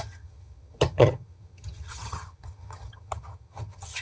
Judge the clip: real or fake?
fake